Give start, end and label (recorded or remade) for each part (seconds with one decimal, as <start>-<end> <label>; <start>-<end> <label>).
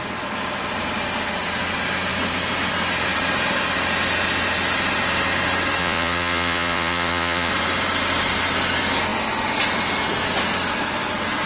0.0-5.8 recorded; 5.8-7.5 remade; 7.5-11.5 recorded